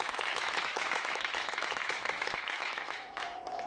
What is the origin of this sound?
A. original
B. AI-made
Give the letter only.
B